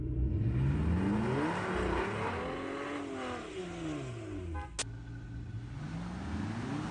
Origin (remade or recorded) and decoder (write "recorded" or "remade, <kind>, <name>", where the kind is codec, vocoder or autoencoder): recorded